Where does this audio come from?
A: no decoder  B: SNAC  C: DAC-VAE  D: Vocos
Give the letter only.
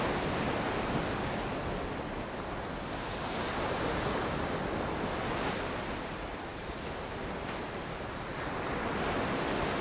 A